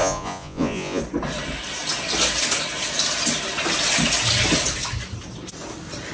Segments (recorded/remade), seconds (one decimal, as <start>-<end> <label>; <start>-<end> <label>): 0.0-1.0 remade; 1.0-6.1 recorded